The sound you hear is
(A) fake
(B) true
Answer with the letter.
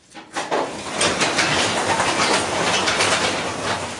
B